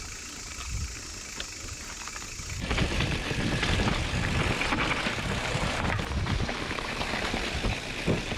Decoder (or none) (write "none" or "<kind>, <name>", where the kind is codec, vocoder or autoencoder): none